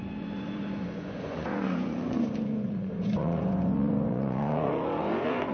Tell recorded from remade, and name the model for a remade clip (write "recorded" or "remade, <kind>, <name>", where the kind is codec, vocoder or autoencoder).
remade, vocoder, Vocos